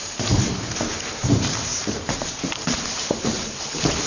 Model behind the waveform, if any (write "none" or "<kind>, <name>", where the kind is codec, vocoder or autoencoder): vocoder, BigVGAN v2